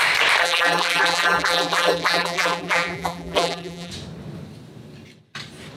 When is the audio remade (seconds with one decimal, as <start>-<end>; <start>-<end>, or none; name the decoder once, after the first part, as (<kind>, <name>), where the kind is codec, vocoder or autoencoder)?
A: 0.4-3.9 (vocoder, BigVGAN v2)